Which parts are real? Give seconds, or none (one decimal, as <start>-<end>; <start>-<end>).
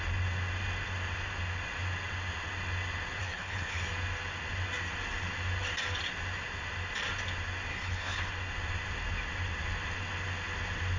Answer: 0.0-3.2; 3.8-7.7; 8.3-11.0